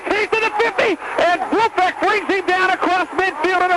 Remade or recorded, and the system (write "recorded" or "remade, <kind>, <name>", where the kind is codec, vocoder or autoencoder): recorded